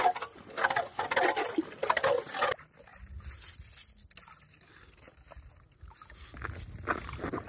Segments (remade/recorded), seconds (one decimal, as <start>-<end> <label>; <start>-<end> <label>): 0.0-7.5 recorded

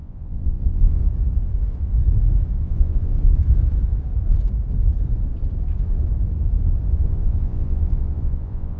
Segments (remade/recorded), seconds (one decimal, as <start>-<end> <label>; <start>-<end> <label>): 0.0-1.0 remade; 1.0-2.6 recorded; 2.6-3.1 remade; 3.1-6.9 recorded; 6.9-8.8 remade

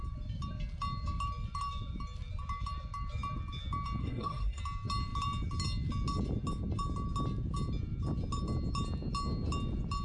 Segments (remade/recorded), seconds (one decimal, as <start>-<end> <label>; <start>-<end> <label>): 0.0-4.0 recorded; 4.0-4.6 remade; 4.6-10.0 recorded

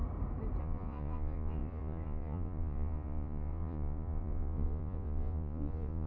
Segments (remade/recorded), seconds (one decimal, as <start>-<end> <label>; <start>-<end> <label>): 0.0-0.6 recorded; 0.6-6.1 remade

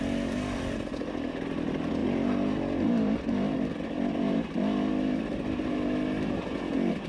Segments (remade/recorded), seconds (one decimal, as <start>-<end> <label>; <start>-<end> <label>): 0.0-7.1 recorded